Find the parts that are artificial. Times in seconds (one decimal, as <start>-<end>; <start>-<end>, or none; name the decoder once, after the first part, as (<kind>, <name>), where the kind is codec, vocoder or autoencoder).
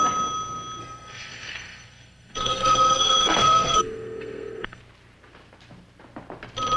0.8-4.8 (codec, SNAC)